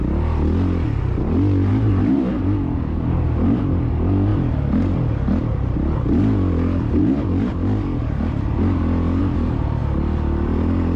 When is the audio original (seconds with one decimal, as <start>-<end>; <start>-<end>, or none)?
0.0-1.7; 2.3-11.0